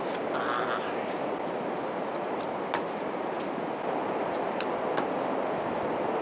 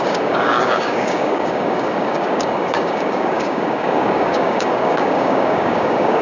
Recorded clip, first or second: first